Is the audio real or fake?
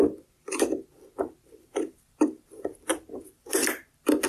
fake